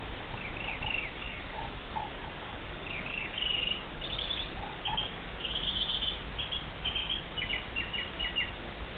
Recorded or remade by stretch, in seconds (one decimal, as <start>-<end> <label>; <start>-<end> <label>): 0.0-1.2 recorded; 1.2-5.5 remade; 5.5-7.0 recorded; 7.0-7.5 remade; 7.5-9.0 recorded